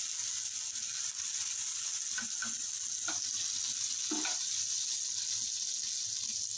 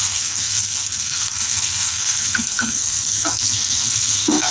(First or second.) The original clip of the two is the first